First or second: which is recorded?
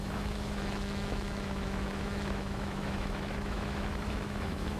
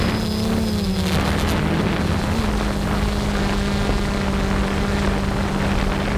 second